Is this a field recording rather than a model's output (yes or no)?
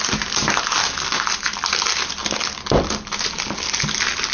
yes